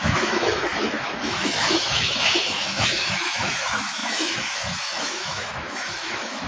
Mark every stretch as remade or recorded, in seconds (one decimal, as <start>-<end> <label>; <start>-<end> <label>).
0.0-6.5 remade